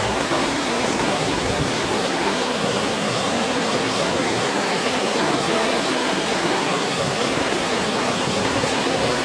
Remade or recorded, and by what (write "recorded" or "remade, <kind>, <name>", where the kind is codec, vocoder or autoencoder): remade, codec, SNAC